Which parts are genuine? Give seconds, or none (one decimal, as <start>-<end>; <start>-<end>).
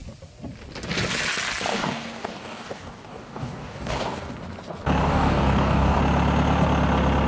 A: 0.0-1.7; 4.3-5.0; 6.0-7.3